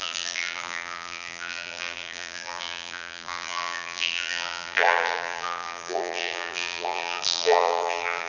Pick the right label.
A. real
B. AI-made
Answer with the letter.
B